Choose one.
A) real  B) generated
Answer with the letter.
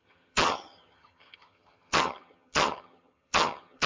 B